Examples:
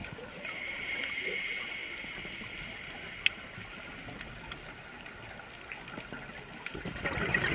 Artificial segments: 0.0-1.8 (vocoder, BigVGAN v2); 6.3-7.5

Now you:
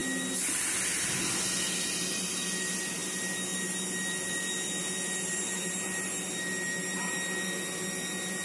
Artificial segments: none